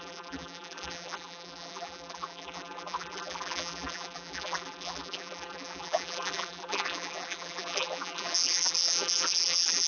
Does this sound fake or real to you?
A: fake